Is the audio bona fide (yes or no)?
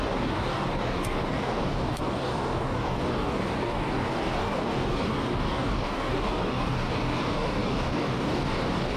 no